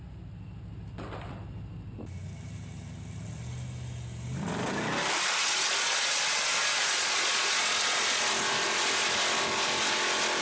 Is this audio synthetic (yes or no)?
no